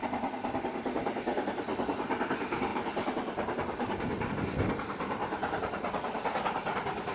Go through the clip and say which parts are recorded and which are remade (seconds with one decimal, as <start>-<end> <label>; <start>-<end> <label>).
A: 0.0-2.7 recorded; 2.7-4.3 remade; 4.3-5.2 recorded; 5.2-7.1 remade